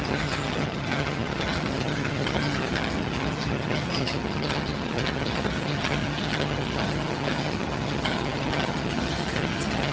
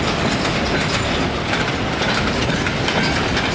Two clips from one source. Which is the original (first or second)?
second